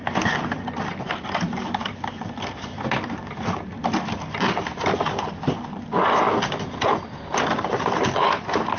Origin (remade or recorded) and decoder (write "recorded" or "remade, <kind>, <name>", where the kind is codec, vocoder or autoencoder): recorded